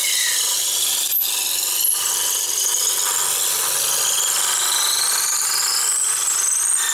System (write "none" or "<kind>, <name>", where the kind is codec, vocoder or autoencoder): none